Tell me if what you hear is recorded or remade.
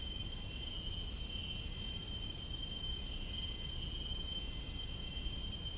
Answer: recorded